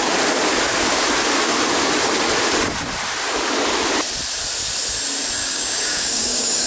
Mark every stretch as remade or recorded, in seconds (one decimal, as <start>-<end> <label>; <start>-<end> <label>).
0.0-5.4 recorded; 5.4-6.7 remade